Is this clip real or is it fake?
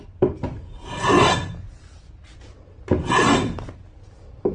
real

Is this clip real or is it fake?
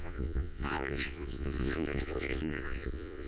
fake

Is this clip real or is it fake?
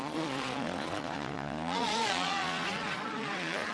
fake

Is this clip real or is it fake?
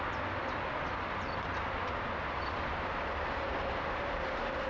real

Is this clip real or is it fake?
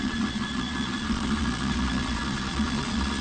fake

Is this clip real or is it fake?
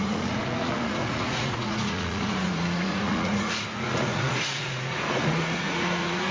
fake